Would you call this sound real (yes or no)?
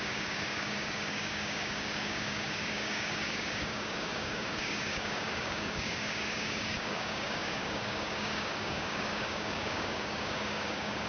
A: no